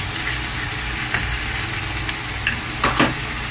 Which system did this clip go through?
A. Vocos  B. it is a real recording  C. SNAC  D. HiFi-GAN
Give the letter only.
B